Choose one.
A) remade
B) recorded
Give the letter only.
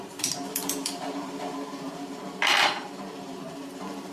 A